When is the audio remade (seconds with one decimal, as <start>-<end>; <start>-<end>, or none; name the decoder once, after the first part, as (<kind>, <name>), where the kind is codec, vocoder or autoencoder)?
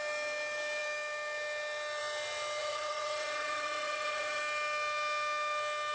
2.6-4.4 (vocoder, WaveNeXt)